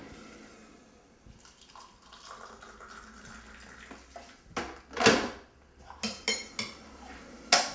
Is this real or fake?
real